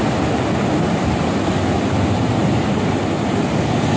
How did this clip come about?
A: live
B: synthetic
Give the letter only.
A